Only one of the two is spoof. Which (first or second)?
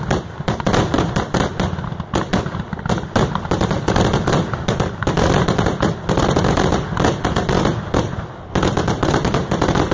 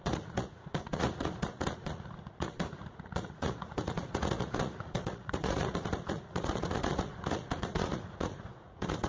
second